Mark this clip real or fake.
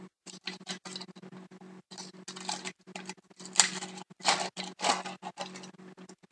real